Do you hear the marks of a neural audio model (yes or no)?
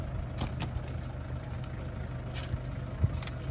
no